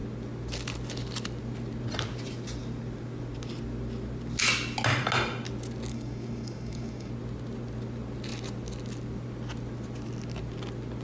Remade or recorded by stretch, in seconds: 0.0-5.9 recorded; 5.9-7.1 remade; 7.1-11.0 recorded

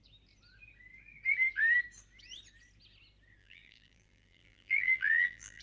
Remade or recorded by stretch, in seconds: 0.0-3.4 recorded; 3.4-5.6 remade

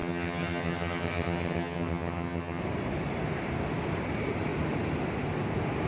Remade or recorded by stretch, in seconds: 0.0-2.6 remade; 2.6-5.9 recorded

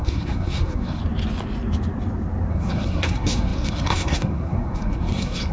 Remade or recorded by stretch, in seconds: 0.0-1.0 remade; 1.0-2.5 recorded; 2.5-5.5 remade

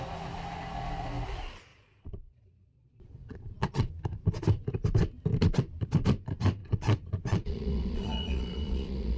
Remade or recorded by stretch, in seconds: 0.0-1.7 recorded; 1.7-3.9 remade; 3.9-6.6 recorded; 6.6-9.2 remade

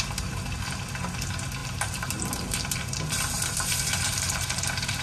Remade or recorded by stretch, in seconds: 0.0-1.6 recorded; 1.6-4.6 remade; 4.6-5.0 recorded